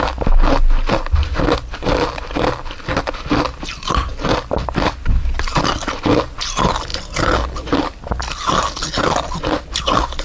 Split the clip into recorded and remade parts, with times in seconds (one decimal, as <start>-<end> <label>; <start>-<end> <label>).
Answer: 0.0-10.2 recorded